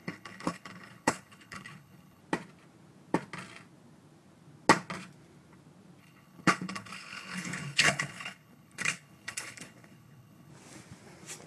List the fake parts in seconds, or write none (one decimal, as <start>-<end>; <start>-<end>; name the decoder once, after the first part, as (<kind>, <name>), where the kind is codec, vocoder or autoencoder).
0.0-2.2 (codec, HILCodec); 6.0-10.5